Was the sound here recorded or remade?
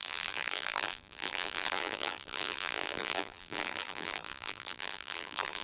remade